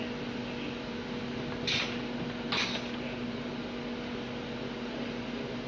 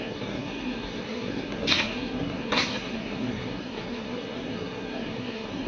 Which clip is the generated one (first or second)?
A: second